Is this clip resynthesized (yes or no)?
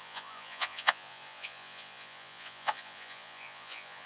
yes